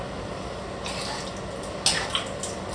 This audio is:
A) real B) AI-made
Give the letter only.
A